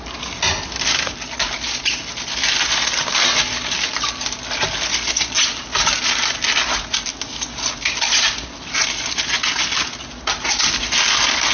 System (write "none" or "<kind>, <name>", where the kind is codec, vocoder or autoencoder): none